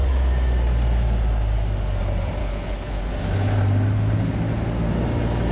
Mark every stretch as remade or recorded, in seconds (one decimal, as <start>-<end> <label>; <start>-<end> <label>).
0.0-2.4 recorded; 2.4-3.0 remade; 3.0-5.5 recorded